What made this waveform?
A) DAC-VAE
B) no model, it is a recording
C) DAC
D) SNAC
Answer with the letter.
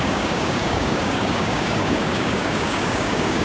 C